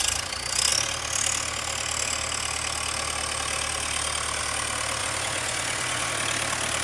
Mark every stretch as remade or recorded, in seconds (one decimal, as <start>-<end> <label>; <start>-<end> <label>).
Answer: 0.0-5.0 recorded; 5.0-6.1 remade; 6.1-6.8 recorded